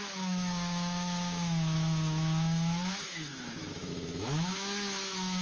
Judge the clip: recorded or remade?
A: remade